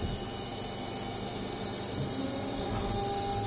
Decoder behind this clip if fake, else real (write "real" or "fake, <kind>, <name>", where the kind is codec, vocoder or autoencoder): real